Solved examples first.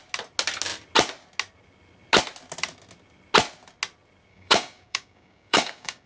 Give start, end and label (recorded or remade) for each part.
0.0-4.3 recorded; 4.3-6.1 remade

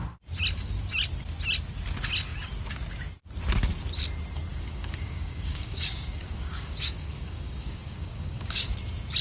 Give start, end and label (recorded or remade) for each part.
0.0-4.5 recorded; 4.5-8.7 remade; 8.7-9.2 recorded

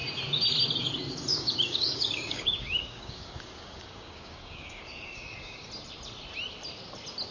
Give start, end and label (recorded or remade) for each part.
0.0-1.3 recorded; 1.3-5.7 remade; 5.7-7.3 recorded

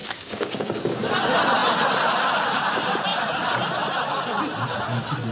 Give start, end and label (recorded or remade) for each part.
0.0-1.1 remade; 1.1-5.3 recorded

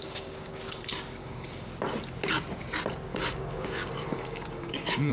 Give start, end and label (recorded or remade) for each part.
0.0-0.6 remade; 0.6-1.2 recorded; 1.2-1.7 remade; 1.7-3.1 recorded; 3.1-5.1 remade

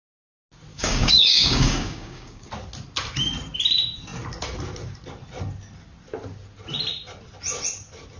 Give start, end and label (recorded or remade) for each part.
0.0-0.7 recorded; 0.7-2.5 remade; 2.5-8.2 recorded

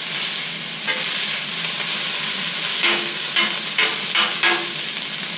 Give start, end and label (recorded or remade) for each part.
0.0-2.7 recorded; 2.7-3.3 remade; 3.3-5.4 recorded